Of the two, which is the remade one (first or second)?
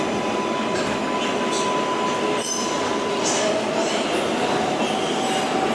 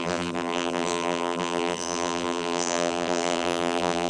second